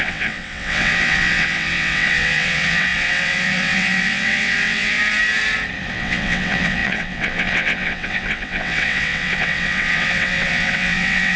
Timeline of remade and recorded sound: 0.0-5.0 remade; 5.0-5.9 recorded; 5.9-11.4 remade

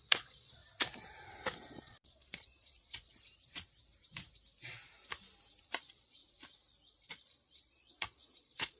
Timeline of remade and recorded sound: 0.0-0.6 remade; 0.6-1.7 recorded; 1.7-3.1 remade; 3.1-5.6 recorded; 5.6-6.2 remade; 6.2-7.1 recorded; 7.1-8.8 remade

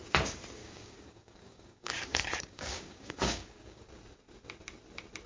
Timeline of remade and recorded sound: 0.0-0.6 recorded; 0.6-3.8 remade; 3.8-5.3 recorded

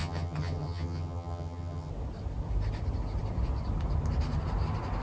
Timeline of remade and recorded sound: 0.0-1.9 remade; 1.9-5.0 recorded

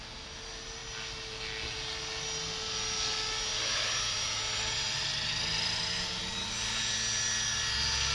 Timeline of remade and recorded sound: 0.0-8.1 recorded

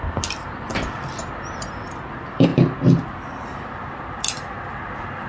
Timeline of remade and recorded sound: 0.0-5.3 recorded

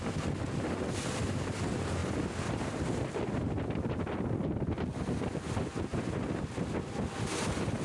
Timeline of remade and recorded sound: 0.0-7.8 recorded